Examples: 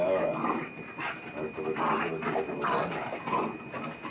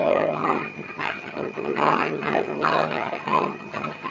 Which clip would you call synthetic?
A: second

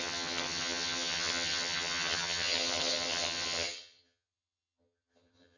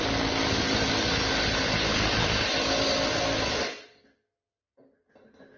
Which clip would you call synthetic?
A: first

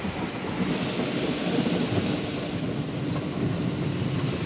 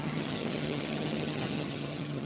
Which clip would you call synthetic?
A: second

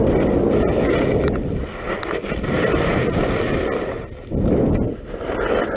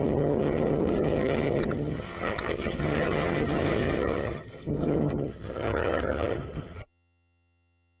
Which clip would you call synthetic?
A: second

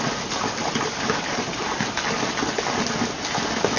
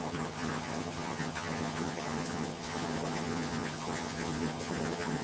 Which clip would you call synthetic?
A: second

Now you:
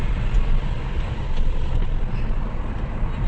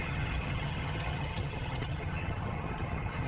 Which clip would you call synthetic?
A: second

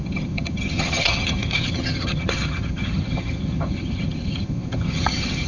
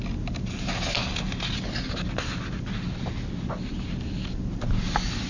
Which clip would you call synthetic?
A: first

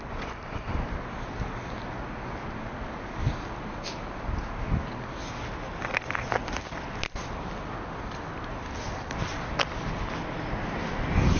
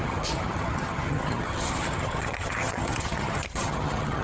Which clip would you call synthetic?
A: second